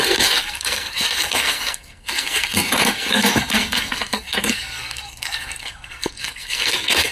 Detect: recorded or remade remade